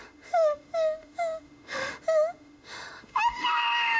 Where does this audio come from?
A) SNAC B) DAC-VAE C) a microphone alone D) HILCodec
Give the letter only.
B